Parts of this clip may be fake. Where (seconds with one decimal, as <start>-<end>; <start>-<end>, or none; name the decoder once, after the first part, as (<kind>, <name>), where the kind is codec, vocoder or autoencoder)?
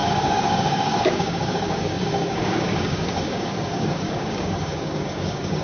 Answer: 0.0-5.6 (codec, DAC)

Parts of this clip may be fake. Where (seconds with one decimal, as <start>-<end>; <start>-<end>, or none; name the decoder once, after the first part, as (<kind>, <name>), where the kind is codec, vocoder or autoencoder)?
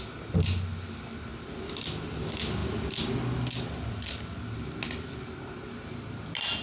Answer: none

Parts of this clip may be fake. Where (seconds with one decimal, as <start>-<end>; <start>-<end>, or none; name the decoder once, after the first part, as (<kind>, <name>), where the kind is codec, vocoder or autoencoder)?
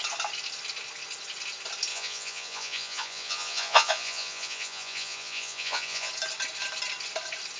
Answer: 1.9-6.1 (vocoder, Vocos)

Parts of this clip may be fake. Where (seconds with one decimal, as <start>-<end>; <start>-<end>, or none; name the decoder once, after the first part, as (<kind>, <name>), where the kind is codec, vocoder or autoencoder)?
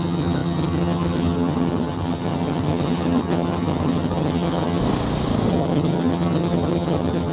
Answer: 0.0-4.8 (vocoder, HiFi-GAN); 5.5-7.3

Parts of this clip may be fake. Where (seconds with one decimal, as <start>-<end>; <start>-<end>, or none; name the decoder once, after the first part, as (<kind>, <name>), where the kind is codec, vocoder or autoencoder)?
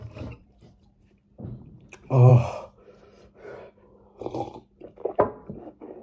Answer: 0.0-1.0 (vocoder, BigVGAN v2)